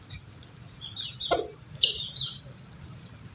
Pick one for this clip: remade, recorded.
remade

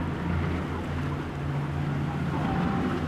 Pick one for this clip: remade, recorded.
recorded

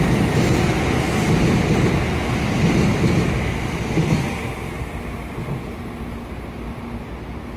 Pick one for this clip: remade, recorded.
recorded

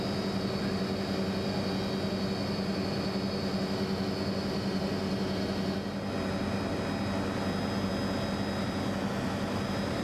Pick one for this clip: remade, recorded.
recorded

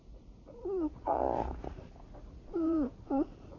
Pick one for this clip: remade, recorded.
remade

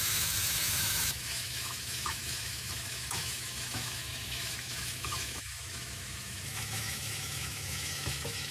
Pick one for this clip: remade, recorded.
remade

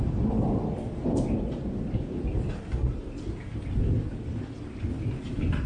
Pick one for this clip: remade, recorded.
recorded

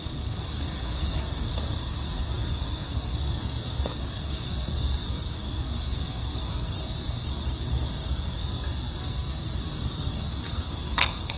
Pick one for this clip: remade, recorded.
remade